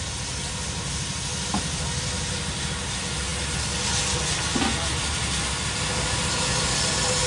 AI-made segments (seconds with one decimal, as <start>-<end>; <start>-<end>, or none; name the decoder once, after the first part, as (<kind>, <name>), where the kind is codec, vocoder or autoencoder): none